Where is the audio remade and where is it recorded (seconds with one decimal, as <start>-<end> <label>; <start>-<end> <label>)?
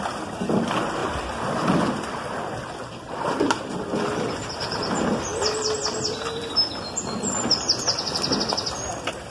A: 0.0-9.3 recorded